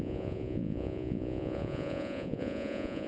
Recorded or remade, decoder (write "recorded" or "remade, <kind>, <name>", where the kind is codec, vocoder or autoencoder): remade, vocoder, Vocos